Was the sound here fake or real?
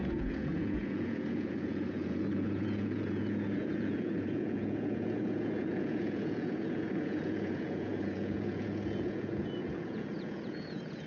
fake